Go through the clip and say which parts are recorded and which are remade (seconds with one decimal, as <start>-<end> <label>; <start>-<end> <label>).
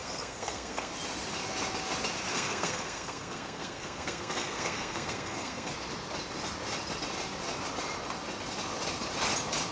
0.0-0.9 remade; 0.9-2.3 recorded; 2.3-5.7 remade; 5.7-9.7 recorded